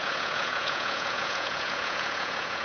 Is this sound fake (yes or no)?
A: yes